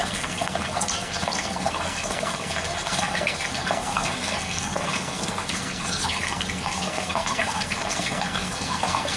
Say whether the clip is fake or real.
fake